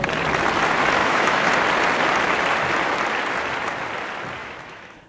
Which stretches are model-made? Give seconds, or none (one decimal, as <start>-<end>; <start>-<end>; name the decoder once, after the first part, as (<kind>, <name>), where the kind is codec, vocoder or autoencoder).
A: 1.0-1.5 (autoencoder, DAC-VAE); 4.4-5.1